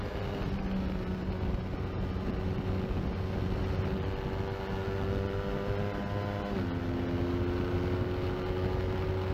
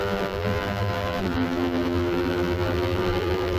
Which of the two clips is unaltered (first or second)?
first